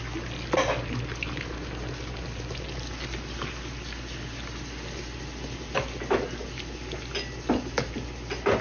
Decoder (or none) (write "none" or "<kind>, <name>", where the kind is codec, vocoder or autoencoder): none